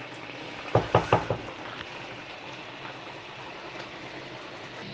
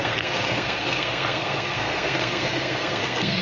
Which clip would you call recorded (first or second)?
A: first